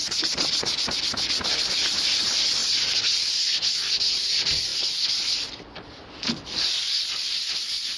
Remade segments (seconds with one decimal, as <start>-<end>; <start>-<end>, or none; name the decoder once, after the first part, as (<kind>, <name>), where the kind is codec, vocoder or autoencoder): none